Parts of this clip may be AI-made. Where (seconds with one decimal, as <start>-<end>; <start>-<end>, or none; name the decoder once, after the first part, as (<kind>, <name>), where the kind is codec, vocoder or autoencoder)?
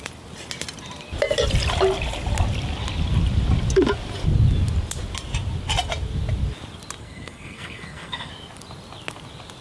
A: 7.0-8.3 (codec, SNAC)